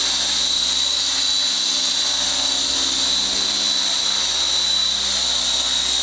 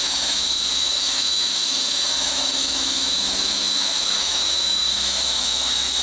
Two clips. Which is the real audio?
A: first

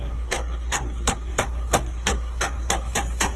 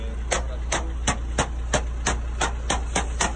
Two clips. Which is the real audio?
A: second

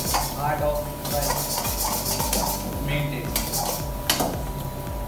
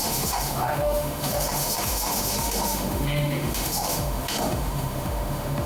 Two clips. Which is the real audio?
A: first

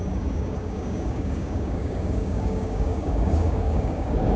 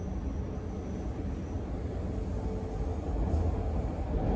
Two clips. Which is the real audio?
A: second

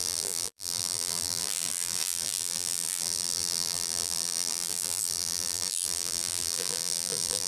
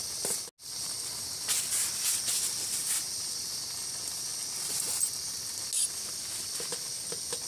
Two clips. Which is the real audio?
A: second